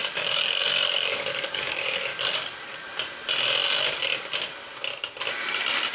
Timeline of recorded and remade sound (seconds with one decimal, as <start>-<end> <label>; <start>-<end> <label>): 0.0-2.1 remade; 2.1-5.9 recorded